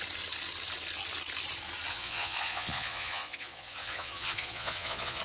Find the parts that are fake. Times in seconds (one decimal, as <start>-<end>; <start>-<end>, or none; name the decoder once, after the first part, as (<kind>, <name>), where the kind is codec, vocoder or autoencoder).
1.9-5.2 (vocoder, Vocos)